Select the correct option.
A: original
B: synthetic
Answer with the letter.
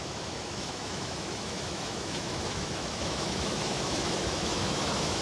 B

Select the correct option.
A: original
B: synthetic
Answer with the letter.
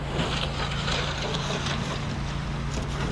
A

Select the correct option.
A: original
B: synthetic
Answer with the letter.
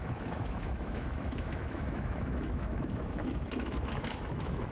B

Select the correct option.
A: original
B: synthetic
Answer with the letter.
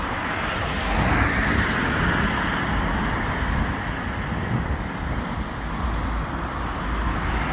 A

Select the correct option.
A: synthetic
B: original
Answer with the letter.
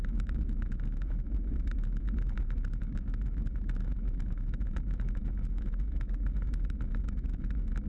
A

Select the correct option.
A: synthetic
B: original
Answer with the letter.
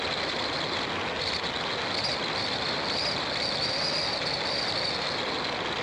B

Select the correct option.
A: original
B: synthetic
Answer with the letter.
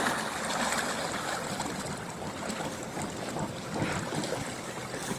A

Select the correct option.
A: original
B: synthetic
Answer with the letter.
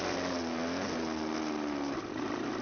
A